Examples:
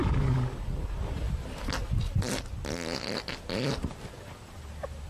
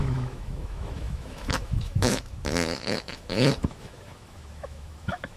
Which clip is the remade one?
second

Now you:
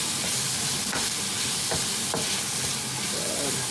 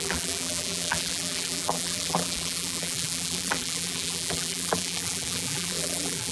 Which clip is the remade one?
second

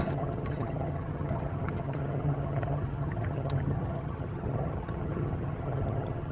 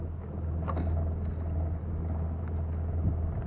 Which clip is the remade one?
first